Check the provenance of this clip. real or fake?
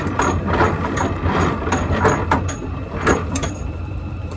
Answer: fake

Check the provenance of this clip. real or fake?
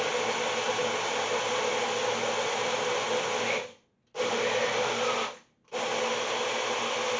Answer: real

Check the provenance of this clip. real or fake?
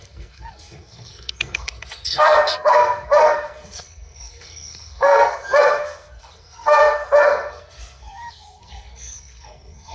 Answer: fake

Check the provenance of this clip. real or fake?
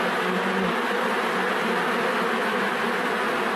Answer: real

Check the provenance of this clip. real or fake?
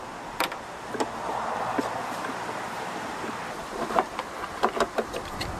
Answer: real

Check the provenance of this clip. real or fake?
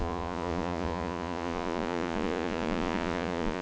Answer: fake